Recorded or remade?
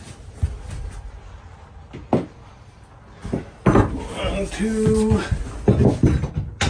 recorded